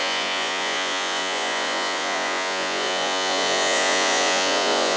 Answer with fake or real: fake